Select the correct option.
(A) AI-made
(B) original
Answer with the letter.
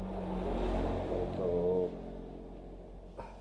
B